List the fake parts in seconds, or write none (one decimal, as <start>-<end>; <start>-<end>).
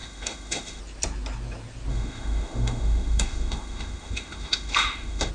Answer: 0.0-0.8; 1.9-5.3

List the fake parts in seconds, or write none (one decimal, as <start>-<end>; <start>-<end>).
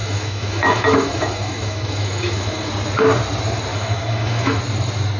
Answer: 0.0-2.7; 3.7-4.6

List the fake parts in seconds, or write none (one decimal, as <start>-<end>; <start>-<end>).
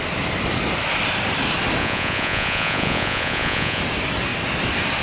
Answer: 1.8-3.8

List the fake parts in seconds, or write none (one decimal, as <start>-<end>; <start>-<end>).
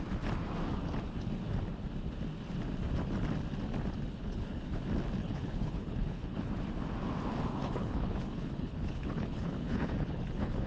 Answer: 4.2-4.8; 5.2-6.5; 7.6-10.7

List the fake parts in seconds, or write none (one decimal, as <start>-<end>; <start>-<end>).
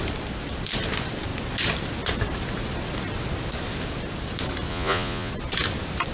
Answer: 4.7-5.3